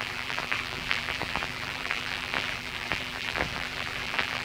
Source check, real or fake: fake